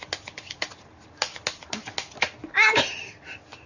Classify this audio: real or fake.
real